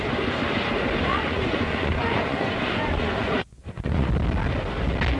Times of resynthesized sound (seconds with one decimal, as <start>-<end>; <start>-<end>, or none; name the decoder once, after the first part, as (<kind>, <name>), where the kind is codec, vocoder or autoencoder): 1.1-4.1 (vocoder, Vocos)